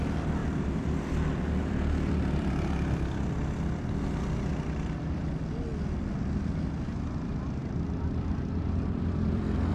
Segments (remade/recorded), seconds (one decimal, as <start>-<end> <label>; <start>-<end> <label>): 0.0-0.4 recorded; 0.4-2.5 remade; 2.5-4.5 recorded; 4.5-5.2 remade; 5.2-7.6 recorded; 7.6-9.7 remade

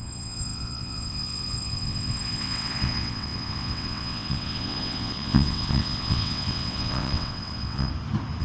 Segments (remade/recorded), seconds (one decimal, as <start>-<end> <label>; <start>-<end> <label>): 0.0-7.9 remade; 7.9-8.4 recorded

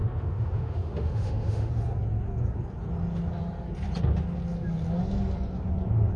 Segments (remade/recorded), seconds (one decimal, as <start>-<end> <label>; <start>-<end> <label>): 0.0-1.7 remade; 1.7-6.2 recorded

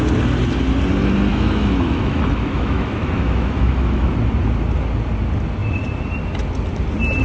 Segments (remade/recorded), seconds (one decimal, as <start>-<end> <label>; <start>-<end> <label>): 0.0-1.3 recorded; 1.3-4.1 remade; 4.1-7.2 recorded

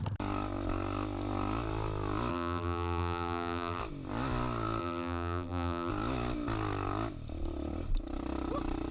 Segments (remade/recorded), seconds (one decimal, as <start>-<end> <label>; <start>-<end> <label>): 0.0-2.3 recorded; 2.3-3.8 remade; 3.8-4.8 recorded; 4.8-5.9 remade; 5.9-8.9 recorded

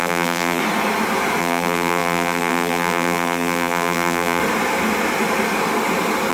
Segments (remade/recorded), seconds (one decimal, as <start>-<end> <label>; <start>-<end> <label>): 0.0-0.6 remade; 0.6-1.4 recorded; 1.4-4.4 remade; 4.4-6.3 recorded